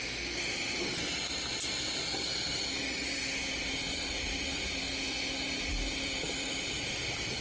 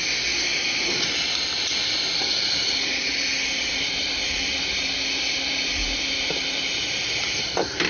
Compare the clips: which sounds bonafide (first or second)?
first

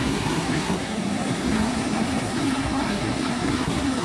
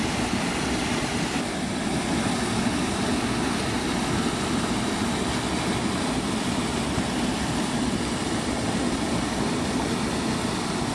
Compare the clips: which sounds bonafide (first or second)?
second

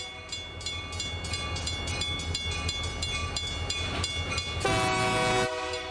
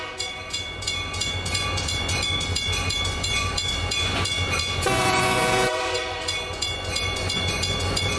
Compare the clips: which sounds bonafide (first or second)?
first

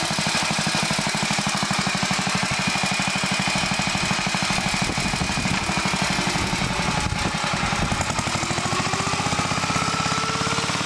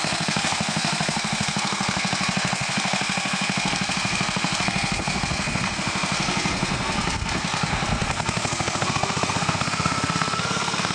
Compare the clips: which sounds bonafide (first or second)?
first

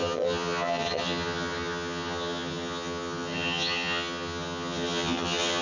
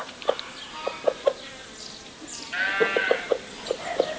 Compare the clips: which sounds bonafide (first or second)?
second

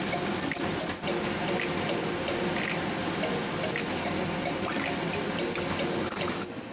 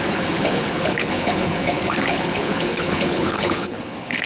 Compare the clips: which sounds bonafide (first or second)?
first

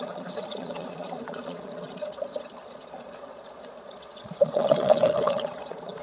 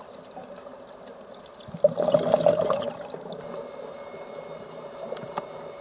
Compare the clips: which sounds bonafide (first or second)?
second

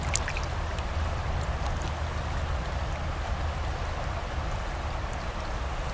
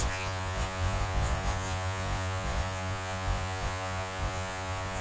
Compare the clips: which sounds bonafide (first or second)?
first